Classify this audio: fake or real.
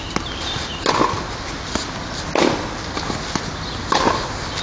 real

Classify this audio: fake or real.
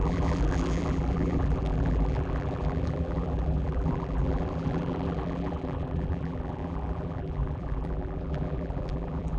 fake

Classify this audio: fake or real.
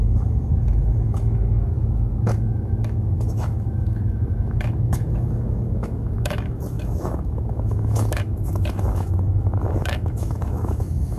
fake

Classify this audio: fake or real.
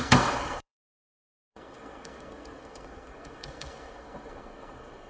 fake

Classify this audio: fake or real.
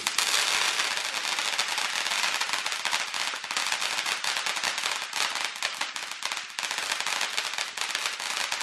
real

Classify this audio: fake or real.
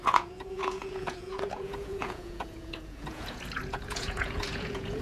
fake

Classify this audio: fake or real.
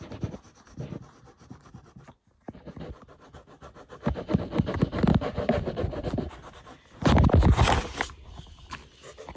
real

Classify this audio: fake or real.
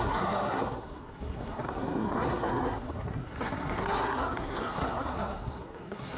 fake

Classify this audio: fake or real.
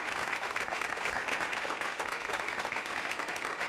fake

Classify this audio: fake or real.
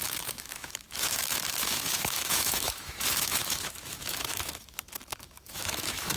fake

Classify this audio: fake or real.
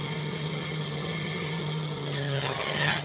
fake